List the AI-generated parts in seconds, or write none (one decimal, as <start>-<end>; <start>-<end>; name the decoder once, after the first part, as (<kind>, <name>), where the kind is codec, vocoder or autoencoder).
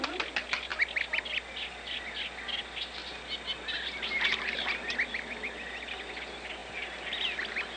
none